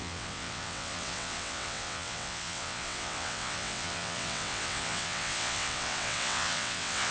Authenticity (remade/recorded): remade